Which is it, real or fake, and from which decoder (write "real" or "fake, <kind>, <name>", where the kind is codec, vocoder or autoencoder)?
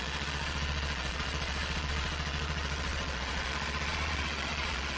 fake, vocoder, Vocos